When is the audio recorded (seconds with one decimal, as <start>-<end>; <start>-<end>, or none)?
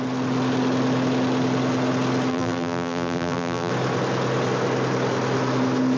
0.0-2.3; 3.7-6.0